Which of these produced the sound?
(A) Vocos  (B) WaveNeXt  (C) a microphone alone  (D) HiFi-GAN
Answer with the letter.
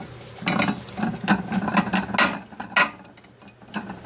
C